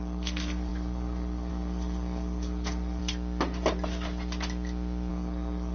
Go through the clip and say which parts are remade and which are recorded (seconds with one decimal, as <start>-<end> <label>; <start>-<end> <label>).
0.0-3.0 remade; 3.0-5.1 recorded; 5.1-5.7 remade